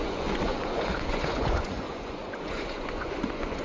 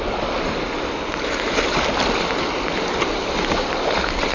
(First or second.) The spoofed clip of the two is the first